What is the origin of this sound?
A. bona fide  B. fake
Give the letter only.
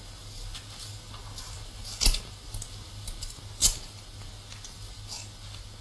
A